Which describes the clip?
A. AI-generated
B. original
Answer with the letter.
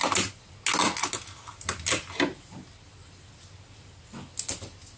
B